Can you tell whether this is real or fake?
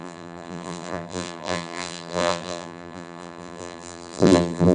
fake